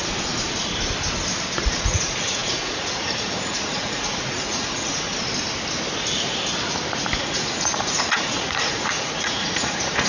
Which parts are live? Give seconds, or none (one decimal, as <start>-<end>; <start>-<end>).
0.0-1.6; 5.1-7.2